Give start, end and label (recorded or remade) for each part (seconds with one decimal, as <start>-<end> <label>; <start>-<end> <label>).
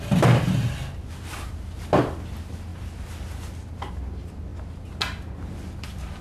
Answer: 0.0-6.2 recorded